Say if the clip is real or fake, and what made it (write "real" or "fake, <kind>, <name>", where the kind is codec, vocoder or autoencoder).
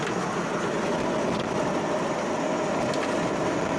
real